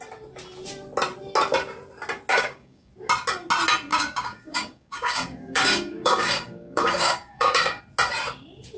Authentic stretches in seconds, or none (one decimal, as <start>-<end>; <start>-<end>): 0.0-2.3; 2.9-3.9; 7.8-8.8